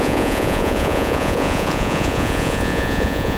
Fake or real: fake